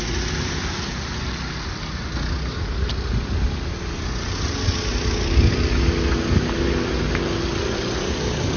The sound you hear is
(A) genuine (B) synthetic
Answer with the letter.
A